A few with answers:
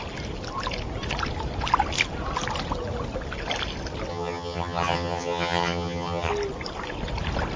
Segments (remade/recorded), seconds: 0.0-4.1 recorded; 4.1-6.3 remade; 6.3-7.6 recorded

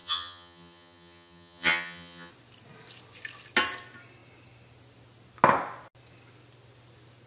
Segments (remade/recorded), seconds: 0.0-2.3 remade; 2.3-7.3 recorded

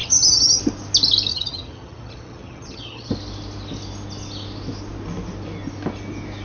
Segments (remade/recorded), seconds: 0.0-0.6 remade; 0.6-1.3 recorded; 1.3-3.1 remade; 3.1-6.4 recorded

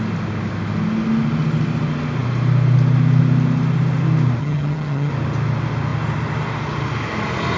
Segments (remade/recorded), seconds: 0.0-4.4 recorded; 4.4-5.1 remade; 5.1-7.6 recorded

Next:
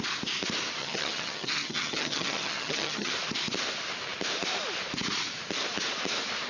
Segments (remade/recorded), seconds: 0.0-0.8 recorded; 0.8-3.1 remade; 3.1-6.5 recorded